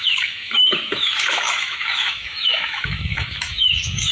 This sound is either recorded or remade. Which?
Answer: remade